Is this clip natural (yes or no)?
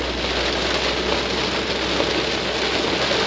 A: yes